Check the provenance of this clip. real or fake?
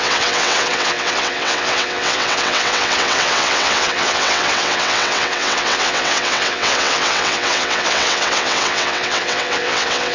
fake